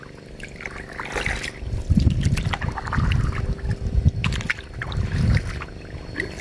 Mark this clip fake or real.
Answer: real